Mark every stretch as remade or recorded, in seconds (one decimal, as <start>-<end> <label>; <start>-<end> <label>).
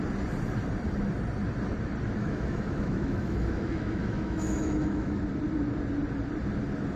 0.0-2.2 recorded; 2.2-5.2 remade; 5.2-7.0 recorded